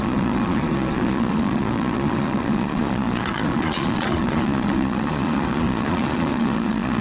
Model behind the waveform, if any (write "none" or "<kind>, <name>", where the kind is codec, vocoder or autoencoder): vocoder, Vocos